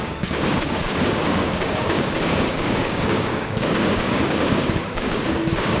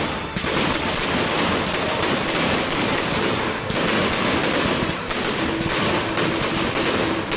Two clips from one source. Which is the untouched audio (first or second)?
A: second